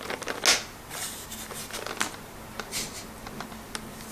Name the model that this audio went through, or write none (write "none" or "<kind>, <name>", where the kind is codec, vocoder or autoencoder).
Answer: none